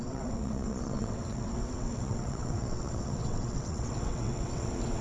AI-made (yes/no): yes